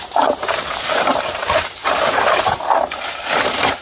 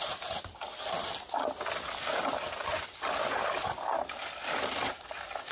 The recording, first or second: second